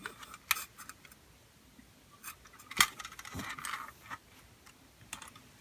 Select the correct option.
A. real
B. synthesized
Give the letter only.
A